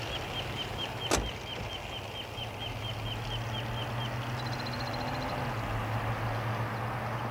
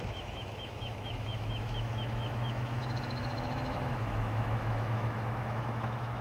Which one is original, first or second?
first